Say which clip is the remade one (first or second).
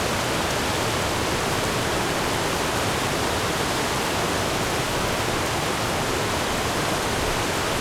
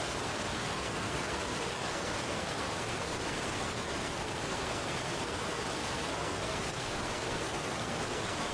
second